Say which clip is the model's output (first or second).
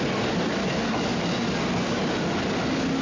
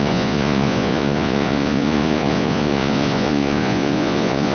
second